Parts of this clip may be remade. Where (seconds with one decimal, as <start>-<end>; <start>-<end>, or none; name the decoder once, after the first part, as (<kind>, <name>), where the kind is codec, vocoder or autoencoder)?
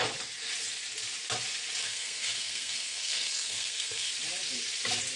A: 1.8-4.1 (codec, SNAC)